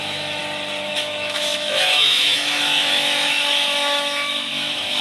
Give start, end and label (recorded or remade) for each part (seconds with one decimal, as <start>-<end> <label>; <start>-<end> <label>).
0.0-0.4 remade; 0.4-0.9 recorded; 0.9-5.0 remade